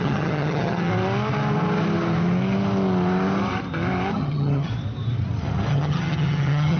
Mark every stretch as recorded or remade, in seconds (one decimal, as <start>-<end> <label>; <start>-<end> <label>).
0.0-0.9 remade; 0.9-4.1 recorded; 4.1-4.7 remade; 4.7-5.7 recorded; 5.7-6.8 remade